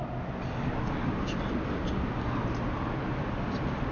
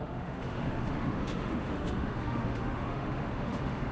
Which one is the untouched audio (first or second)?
first